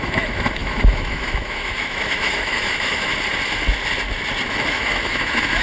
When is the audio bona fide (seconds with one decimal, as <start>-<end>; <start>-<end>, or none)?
3.1-4.5